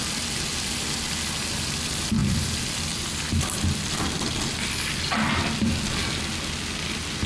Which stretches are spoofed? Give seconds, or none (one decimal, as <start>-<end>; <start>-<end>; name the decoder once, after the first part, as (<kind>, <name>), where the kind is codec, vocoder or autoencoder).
none